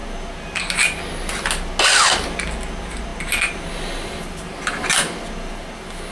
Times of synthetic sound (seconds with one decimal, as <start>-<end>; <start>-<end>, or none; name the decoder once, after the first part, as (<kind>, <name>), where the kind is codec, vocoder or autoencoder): none